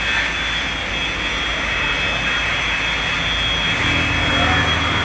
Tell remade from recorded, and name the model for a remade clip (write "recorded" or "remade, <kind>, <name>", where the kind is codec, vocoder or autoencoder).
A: recorded